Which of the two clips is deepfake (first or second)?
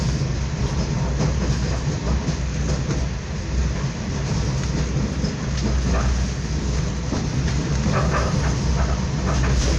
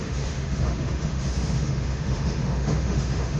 second